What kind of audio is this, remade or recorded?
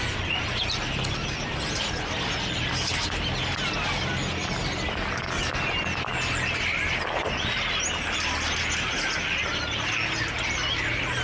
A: recorded